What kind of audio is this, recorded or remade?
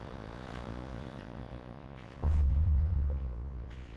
remade